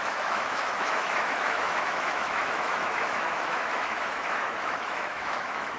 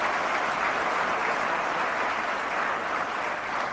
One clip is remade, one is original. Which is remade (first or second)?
first